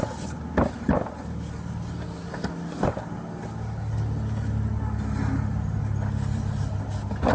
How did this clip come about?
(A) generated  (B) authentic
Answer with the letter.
B